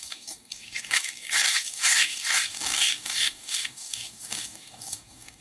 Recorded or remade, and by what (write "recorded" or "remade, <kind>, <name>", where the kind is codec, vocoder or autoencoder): remade, codec, DAC